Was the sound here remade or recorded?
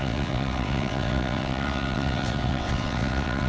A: remade